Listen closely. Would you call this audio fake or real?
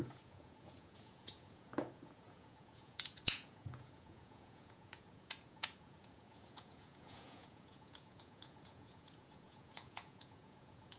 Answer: fake